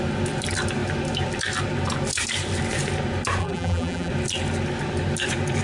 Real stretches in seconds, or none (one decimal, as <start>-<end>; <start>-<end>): 0.0-3.4; 4.1-5.6